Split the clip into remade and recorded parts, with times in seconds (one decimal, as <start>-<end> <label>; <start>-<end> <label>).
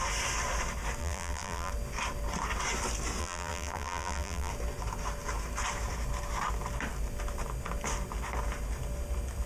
0.0-1.0 recorded; 1.0-1.7 remade; 1.7-3.2 recorded; 3.2-4.5 remade; 4.5-9.5 recorded